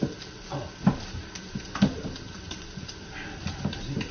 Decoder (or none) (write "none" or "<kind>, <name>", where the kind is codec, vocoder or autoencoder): none